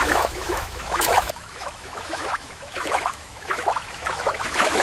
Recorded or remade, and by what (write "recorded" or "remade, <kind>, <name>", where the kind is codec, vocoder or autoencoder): remade, autoencoder, DAC-VAE